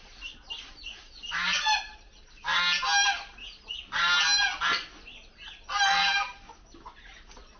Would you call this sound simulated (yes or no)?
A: no